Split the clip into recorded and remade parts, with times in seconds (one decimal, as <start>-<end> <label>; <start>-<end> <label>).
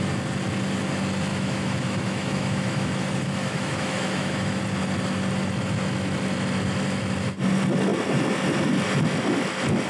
0.0-1.3 recorded; 1.3-4.6 remade; 4.6-9.9 recorded